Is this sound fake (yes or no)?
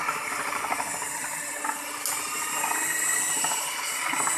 no